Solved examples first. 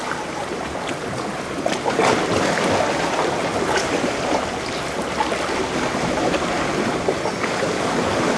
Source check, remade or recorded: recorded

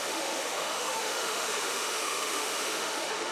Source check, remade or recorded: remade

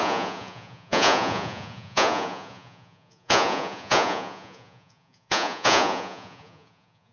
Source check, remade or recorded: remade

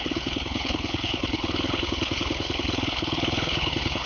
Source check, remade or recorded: remade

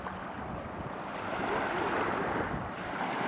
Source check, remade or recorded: recorded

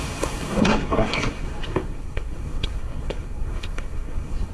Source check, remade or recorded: remade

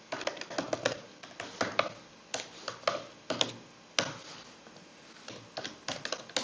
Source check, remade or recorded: recorded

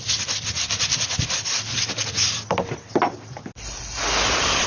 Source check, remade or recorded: recorded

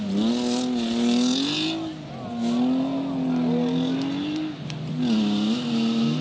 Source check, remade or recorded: recorded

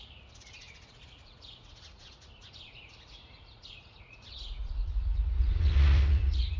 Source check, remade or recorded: remade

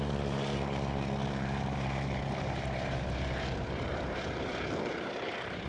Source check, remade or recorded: remade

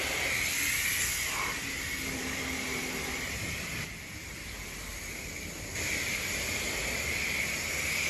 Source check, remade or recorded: remade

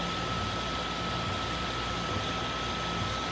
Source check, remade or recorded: recorded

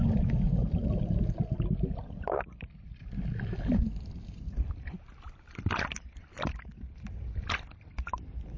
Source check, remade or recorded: recorded